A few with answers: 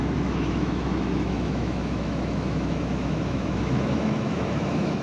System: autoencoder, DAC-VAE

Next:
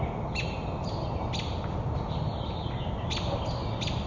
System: none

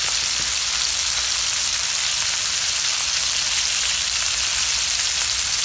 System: none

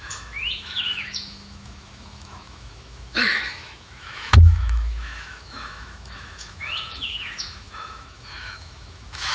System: autoencoder, DAC-VAE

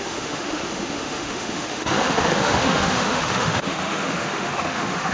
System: autoencoder, DAC-VAE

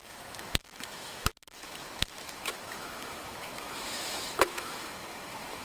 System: autoencoder, DAC-VAE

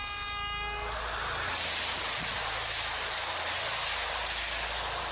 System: none